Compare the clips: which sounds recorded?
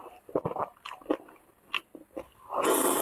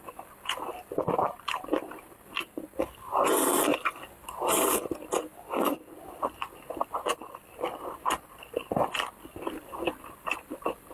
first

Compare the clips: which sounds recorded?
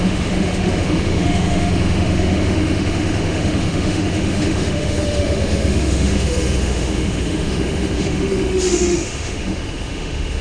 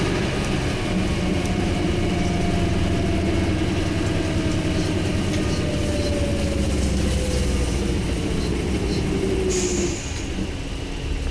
second